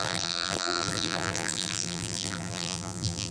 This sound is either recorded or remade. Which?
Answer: remade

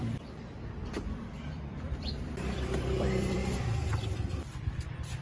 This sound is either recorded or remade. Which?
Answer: remade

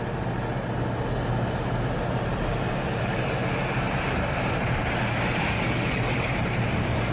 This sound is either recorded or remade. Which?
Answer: remade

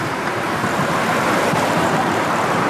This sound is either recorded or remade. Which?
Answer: remade